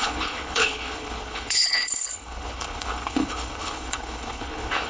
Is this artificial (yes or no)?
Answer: yes